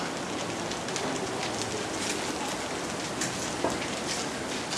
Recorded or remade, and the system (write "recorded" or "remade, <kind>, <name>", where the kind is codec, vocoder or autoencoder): recorded